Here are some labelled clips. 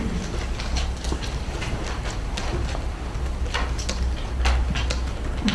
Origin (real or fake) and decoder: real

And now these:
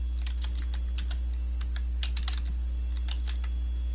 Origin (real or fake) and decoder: real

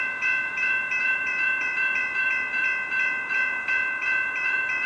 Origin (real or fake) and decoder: fake, vocoder, Vocos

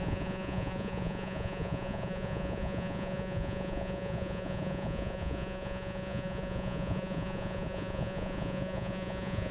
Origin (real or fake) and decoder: fake, vocoder, Vocos